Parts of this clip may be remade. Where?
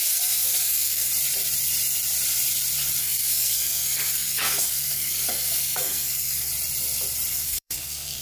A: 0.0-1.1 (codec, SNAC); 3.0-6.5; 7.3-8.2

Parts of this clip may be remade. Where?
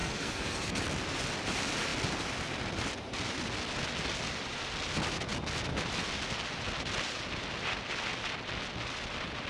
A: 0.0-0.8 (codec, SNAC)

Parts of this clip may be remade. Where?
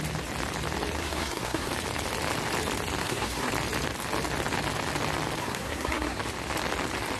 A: 1.0-1.7 (codec, SNAC); 3.0-3.5; 5.4-6.2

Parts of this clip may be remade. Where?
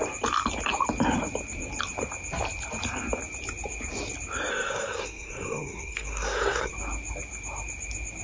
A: 4.5-6.7 (codec, SNAC)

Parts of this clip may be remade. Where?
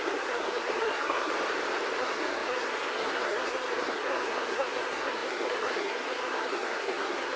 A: 0.0-1.3 (codec, SNAC); 2.0-7.4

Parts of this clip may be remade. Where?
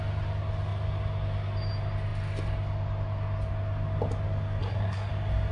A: 4.6-5.1 (codec, SNAC)